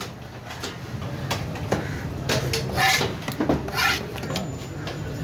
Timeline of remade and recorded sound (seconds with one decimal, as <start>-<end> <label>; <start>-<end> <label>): 0.0-5.2 recorded